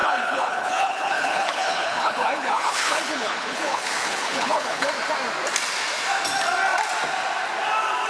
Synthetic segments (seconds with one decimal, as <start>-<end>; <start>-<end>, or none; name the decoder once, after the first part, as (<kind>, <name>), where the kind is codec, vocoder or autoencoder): 0.0-4.9 (codec, HILCodec)